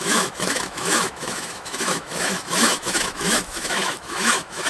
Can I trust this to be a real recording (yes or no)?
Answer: no